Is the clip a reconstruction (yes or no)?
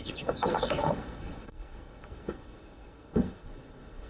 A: yes